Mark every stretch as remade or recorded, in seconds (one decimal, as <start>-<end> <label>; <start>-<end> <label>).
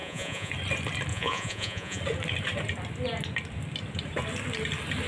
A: 0.0-0.5 remade; 0.5-1.1 recorded; 1.1-2.0 remade; 2.0-5.1 recorded